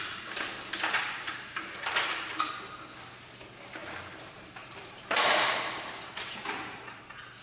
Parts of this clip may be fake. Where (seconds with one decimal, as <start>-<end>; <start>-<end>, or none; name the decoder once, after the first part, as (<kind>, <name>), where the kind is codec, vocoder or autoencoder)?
1.0-2.5 (vocoder, BigVGAN v2); 3.8-7.0